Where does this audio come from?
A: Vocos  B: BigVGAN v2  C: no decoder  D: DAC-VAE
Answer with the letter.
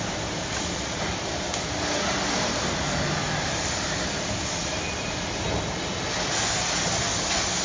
C